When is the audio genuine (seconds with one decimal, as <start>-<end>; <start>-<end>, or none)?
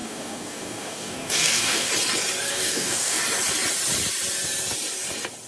1.9-2.5; 3.2-5.5